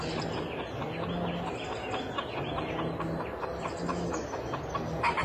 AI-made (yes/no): no